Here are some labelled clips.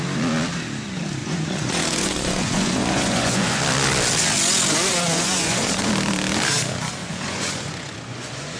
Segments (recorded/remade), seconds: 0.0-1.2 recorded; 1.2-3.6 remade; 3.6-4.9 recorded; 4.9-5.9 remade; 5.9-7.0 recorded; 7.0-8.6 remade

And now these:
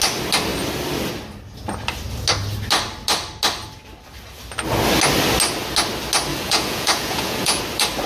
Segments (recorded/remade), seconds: 0.0-6.3 recorded; 6.3-7.6 remade; 7.6-8.1 recorded

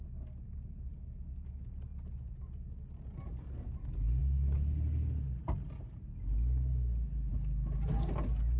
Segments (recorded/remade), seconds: 0.0-8.6 recorded